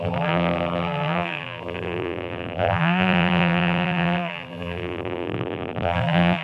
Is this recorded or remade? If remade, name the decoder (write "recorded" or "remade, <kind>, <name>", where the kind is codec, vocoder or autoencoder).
remade, vocoder, BigVGAN v2